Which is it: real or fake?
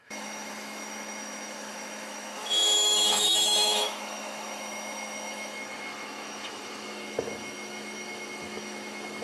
fake